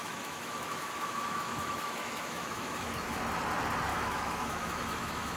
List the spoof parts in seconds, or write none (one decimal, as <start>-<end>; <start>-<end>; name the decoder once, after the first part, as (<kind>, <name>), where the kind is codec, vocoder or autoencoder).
0.0-3.2 (autoencoder, DAC-VAE); 3.9-5.4